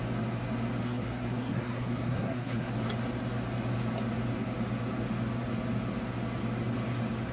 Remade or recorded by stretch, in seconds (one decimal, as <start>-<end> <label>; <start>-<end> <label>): 0.0-0.8 recorded; 0.8-2.7 remade; 2.7-7.3 recorded